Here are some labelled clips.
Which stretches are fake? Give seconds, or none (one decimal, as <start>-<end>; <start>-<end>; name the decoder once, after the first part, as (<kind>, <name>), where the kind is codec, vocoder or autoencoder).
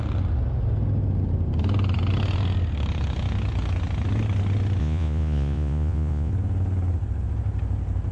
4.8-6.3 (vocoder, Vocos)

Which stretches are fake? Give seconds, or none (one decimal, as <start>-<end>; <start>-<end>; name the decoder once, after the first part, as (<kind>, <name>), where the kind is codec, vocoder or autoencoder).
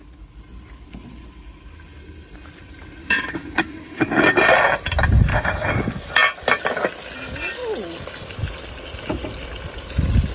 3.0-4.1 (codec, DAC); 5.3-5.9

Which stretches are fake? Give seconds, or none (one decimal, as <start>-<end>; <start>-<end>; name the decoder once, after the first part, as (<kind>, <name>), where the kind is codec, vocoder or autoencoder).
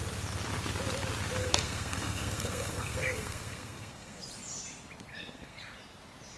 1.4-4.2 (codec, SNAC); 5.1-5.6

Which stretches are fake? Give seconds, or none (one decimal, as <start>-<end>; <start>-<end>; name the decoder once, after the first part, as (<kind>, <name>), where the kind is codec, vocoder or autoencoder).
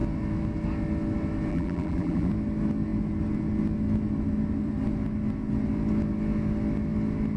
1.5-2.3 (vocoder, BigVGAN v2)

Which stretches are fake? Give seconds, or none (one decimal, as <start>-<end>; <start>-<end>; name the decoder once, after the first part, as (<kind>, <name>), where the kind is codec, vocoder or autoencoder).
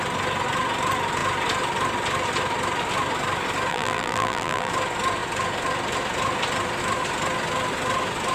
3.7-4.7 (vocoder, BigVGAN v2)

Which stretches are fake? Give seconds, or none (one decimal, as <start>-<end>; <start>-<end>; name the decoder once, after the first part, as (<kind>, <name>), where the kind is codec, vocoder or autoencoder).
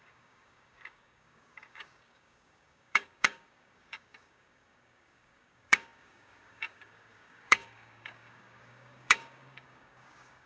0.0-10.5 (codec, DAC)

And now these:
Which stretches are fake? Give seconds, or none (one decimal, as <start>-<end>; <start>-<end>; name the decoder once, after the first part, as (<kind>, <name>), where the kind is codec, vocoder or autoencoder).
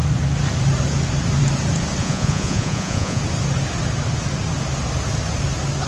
2.0-3.2 (vocoder, Vocos)